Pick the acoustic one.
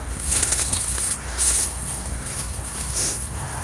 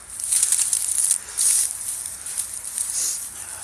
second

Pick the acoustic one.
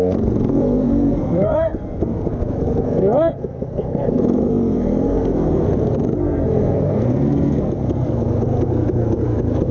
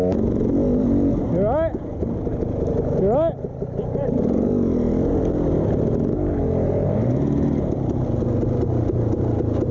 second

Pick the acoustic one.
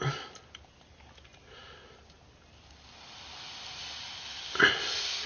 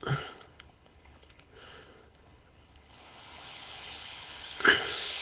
first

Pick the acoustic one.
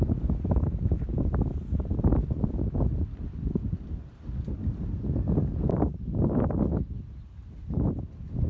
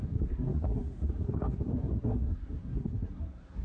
first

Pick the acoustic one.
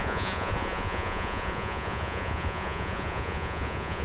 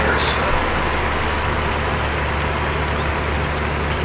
second